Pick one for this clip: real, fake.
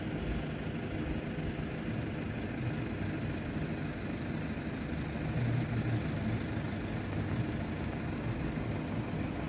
real